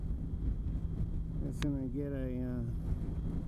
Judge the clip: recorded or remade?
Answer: recorded